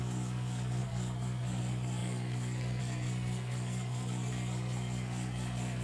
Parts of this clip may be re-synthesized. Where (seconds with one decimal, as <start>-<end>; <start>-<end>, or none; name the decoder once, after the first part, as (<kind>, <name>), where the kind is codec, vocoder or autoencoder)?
0.0-5.8 (codec, SNAC)